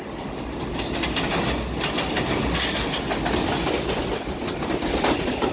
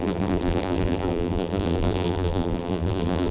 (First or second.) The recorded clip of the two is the first